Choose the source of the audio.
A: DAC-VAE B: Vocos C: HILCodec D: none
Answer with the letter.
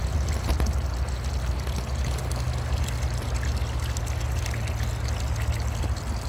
D